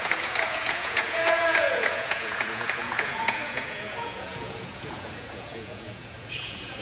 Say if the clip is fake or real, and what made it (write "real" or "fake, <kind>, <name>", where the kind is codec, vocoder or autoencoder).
fake, vocoder, Vocos